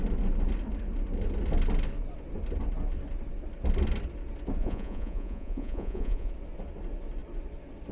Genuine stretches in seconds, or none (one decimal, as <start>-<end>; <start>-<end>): 0.0-4.6; 6.3-7.9